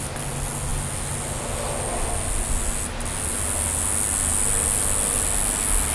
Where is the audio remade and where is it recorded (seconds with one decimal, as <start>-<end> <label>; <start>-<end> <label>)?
0.0-5.9 recorded